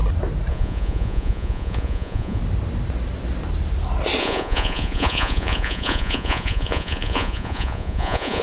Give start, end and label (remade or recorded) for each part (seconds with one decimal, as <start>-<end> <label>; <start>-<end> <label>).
0.0-0.5 recorded; 0.5-2.4 remade; 2.4-4.2 recorded; 4.2-8.4 remade